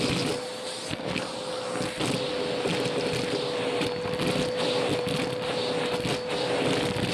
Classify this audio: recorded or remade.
recorded